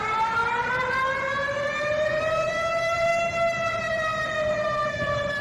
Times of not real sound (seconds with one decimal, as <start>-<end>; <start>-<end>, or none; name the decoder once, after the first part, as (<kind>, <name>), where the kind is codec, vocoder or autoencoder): 0.0-3.1 (vocoder, BigVGAN v2); 4.9-5.4